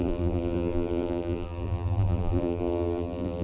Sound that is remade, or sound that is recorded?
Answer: remade